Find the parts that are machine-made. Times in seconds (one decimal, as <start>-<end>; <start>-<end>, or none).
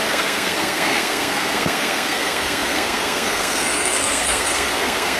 0.0-5.2